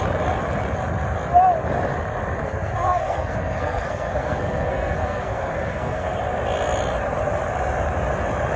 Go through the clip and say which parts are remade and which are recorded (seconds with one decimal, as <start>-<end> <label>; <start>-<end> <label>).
0.0-2.4 recorded; 2.4-6.2 remade; 6.2-8.6 recorded